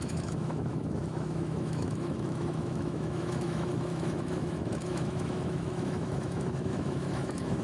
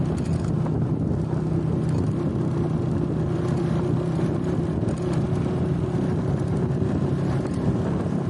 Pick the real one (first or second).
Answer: second